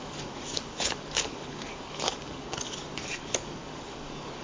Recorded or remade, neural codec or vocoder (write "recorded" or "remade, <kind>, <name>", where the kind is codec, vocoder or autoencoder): remade, codec, DAC